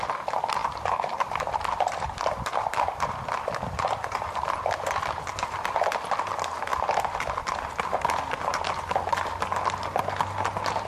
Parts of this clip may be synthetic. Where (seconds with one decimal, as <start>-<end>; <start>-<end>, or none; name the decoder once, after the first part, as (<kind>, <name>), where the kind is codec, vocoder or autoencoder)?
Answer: 0.6-3.1 (vocoder, BigVGAN v2)